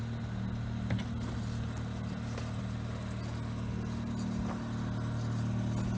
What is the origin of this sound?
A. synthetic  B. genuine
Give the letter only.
B